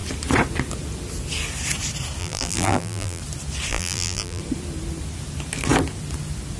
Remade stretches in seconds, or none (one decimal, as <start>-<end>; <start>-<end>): 2.2-3.2; 3.7-4.4